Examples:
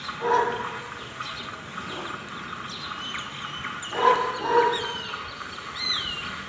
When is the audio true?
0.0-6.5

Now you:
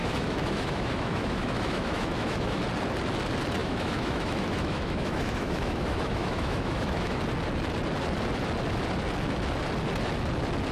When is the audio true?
2.6-3.6; 7.2-10.7

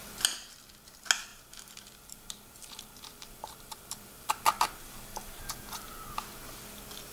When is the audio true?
0.0-1.3; 5.4-7.1

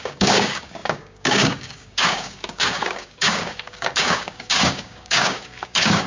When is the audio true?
none

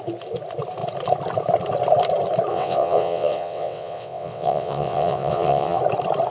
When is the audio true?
0.0-2.5; 5.8-6.3

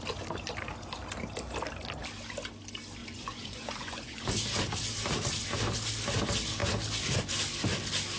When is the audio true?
0.0-3.0; 4.3-8.2

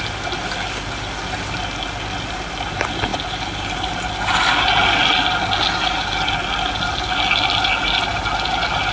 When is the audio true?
0.0-8.9

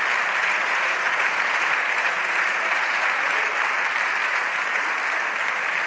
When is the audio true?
0.0-0.4; 3.5-4.2; 4.9-5.9